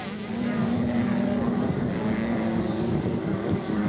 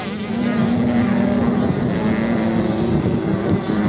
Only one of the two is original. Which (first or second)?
second